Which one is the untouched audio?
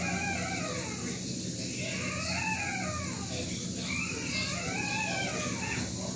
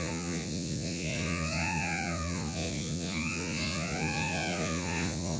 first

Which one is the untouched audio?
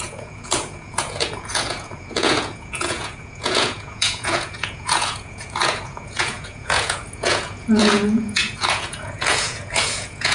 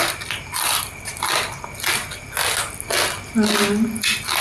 second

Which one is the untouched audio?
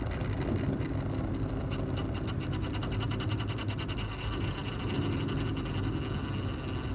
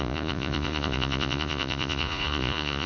first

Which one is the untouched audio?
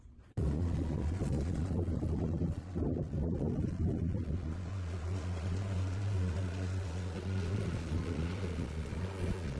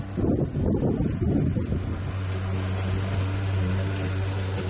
second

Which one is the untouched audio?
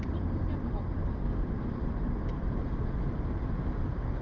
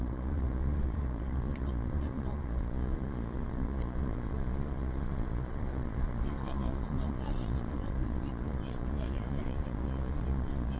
first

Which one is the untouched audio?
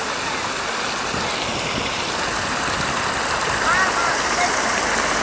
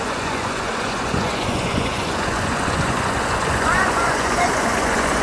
first